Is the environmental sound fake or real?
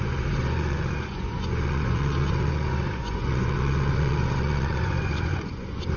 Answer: fake